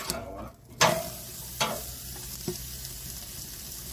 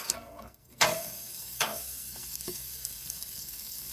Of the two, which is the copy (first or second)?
second